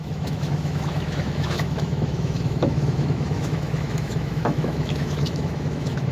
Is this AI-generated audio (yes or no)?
yes